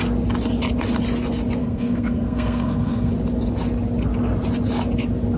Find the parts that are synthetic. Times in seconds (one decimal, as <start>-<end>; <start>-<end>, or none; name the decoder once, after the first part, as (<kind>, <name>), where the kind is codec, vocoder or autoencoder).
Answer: 1.6-3.1 (codec, SNAC)